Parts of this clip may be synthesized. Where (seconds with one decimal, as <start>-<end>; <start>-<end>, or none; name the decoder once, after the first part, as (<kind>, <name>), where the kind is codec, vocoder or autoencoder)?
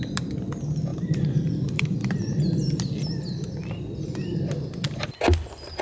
0.9-1.8 (vocoder, BigVGAN v2)